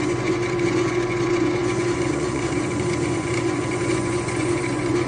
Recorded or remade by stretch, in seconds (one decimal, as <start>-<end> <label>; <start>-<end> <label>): 0.0-5.1 remade